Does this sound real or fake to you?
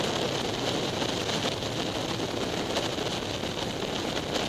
real